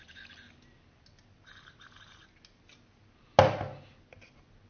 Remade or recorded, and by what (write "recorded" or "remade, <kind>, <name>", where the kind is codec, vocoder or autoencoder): recorded